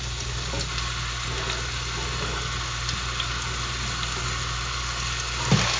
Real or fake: real